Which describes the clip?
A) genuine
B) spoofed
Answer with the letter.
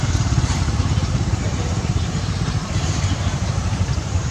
B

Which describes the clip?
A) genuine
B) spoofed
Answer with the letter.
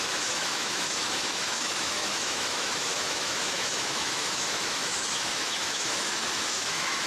B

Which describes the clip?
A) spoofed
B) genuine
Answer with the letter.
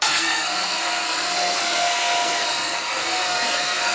A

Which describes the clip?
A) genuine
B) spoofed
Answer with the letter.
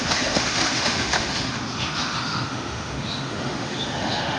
B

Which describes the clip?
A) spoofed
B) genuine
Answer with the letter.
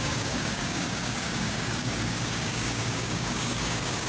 A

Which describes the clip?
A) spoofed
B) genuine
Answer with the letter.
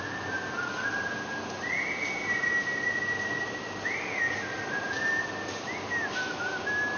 B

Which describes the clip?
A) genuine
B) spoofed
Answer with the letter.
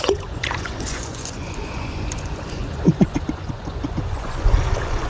B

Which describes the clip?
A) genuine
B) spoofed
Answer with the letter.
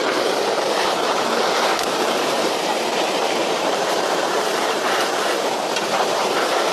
B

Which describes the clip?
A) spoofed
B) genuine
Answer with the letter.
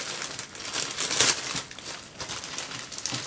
B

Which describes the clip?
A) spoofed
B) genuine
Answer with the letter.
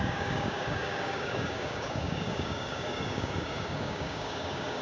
A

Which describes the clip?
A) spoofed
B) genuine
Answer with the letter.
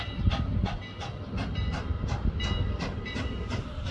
B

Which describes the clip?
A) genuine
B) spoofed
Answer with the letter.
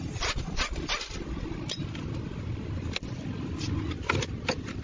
A